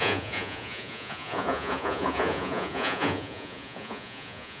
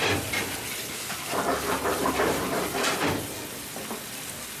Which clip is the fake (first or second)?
first